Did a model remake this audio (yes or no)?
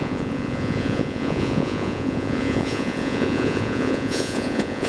yes